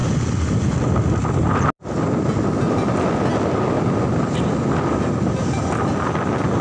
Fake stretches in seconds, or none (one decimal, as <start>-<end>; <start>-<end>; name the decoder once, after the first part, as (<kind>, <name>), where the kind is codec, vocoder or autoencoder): none